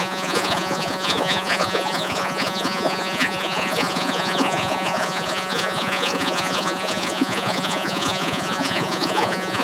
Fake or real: fake